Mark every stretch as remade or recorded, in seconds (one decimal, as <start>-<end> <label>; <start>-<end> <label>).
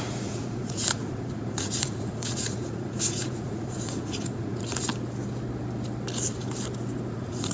0.0-4.9 remade; 4.9-7.1 recorded; 7.1-7.5 remade